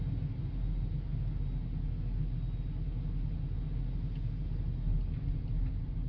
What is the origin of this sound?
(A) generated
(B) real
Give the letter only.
B